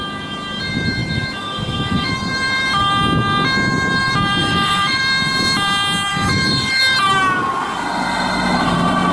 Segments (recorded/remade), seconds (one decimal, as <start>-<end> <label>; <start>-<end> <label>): 0.0-1.0 recorded; 1.0-2.1 remade; 2.1-4.4 recorded; 4.4-5.0 remade; 5.0-6.1 recorded; 6.1-6.8 remade; 6.8-9.1 recorded

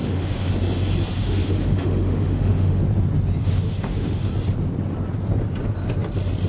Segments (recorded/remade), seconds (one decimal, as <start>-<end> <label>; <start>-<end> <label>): 0.0-0.5 remade; 0.5-1.2 recorded; 1.2-2.8 remade; 2.8-3.4 recorded; 3.4-4.3 remade; 4.3-6.5 recorded